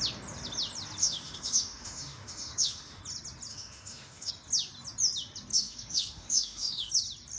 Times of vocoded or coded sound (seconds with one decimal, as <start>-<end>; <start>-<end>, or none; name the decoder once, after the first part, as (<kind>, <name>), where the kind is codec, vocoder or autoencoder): 1.0-3.0 (autoencoder, DAC-VAE); 3.5-4.3; 5.5-6.9